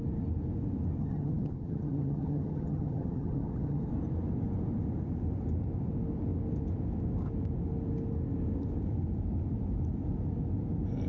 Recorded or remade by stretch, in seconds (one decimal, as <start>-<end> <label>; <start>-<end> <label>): 0.0-1.0 recorded; 1.0-3.9 remade; 3.9-11.1 recorded